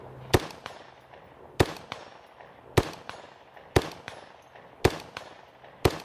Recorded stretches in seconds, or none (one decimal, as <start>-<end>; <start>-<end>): 0.0-6.0